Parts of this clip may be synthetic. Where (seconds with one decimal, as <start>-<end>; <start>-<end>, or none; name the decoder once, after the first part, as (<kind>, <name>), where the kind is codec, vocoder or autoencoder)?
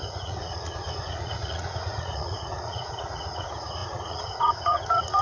0.0-5.2 (vocoder, Vocos)